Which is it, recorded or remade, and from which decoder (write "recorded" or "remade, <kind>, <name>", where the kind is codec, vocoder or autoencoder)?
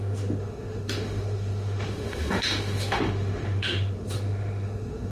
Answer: remade, autoencoder, DAC-VAE